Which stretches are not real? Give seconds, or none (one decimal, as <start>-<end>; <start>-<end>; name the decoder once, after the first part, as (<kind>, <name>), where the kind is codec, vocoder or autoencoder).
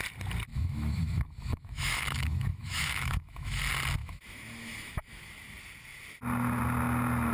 0.5-3.6 (autoencoder, DAC-VAE); 4.0-5.3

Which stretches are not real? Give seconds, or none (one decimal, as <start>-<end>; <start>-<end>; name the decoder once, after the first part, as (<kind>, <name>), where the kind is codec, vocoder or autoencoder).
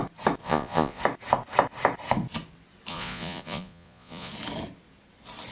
0.4-1.0 (vocoder, Vocos); 2.9-4.3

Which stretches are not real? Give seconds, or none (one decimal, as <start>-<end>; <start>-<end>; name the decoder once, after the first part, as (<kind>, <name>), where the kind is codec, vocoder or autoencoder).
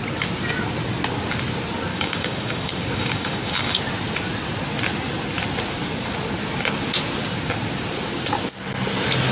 1.9-3.8 (codec, DAC)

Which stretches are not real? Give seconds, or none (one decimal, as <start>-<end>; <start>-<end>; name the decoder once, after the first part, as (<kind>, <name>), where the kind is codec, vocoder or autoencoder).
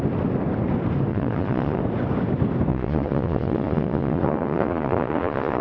1.1-1.8 (vocoder, Vocos); 2.7-5.6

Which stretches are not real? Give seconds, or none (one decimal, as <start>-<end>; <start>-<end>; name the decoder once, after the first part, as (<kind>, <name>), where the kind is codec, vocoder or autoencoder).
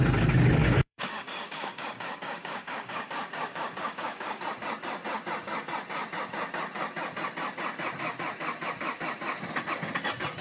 0.6-4.4 (codec, DAC)